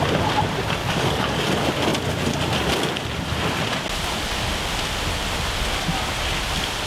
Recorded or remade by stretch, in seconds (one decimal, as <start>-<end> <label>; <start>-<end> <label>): 0.0-0.8 recorded; 0.8-1.5 remade; 1.5-6.9 recorded